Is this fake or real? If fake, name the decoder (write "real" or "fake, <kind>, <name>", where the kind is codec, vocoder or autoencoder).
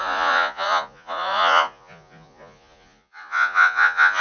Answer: fake, vocoder, Vocos